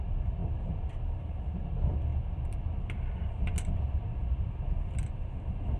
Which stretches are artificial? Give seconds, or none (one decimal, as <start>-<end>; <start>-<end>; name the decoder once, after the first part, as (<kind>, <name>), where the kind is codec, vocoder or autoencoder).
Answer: none